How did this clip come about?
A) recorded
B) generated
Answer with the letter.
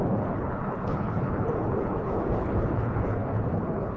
B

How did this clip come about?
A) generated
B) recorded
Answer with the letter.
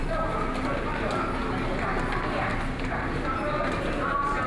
B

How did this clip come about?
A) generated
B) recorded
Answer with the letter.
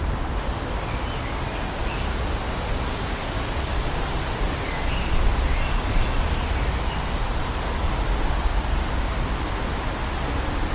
B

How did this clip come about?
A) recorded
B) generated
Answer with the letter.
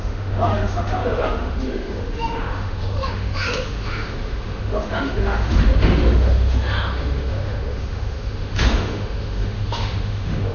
B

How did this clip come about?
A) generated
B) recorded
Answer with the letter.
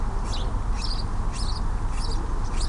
B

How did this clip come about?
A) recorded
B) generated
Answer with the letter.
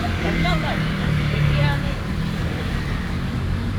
B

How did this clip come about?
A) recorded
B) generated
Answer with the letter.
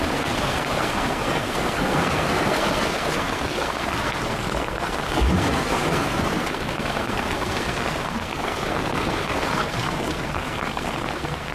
B